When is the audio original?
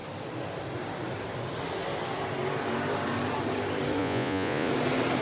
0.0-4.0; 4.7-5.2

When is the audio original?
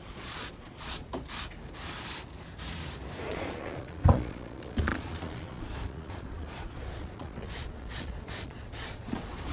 1.1-3.3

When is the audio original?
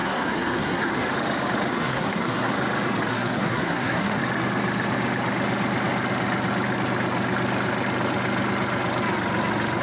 1.1-1.7; 2.5-3.1; 4.2-9.8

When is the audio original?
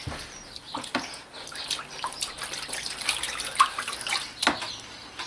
0.0-5.3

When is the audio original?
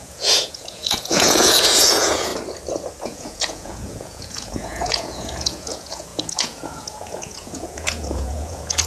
2.3-3.0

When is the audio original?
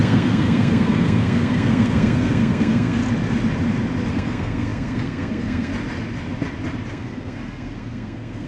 3.0-4.1; 5.7-6.9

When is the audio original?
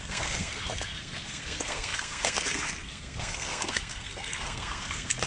none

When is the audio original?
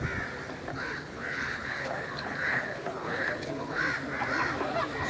0.0-0.7; 3.8-5.1